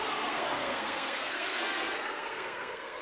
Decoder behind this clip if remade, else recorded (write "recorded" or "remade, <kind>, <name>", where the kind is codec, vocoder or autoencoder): remade, codec, SNAC